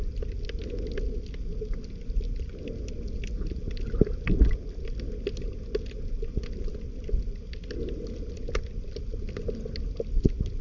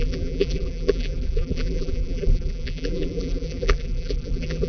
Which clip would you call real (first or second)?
first